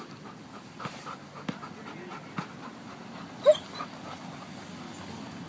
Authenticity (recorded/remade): recorded